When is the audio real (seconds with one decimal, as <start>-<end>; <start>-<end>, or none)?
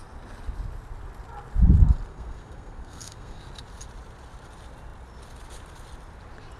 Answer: 0.0-2.1; 3.4-6.6